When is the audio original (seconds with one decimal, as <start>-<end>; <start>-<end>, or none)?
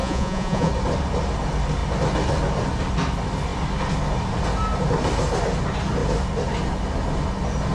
0.7-7.7